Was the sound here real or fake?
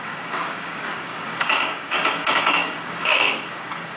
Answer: fake